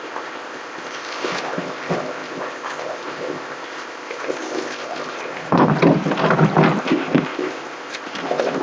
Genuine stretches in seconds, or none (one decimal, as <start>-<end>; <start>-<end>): 5.7-6.8